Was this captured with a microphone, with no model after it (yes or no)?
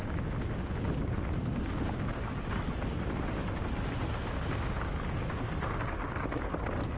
yes